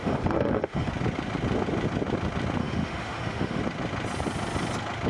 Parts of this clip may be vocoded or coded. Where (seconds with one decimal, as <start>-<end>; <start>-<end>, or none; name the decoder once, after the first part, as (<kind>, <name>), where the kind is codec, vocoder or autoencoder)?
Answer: 0.0-0.9 (autoencoder, DAC-VAE); 2.6-3.6

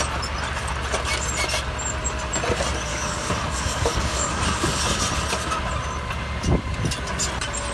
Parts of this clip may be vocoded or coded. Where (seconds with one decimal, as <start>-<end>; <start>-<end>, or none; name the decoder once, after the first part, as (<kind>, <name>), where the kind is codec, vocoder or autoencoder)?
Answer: 2.9-4.8 (codec, DAC)

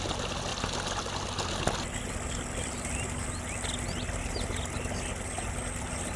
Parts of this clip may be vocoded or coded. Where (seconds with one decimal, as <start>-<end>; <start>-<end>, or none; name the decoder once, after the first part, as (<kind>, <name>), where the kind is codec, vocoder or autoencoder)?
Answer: none

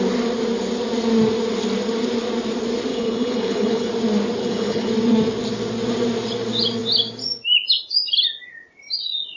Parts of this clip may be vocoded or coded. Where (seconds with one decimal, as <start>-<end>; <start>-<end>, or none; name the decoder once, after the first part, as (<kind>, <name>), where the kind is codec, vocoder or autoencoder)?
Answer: 2.9-3.9 (codec, HILCodec); 4.4-4.9